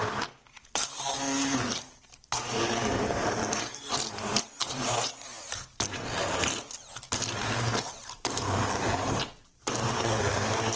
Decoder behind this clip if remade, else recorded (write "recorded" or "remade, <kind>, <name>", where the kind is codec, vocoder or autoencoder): remade, vocoder, BigVGAN v2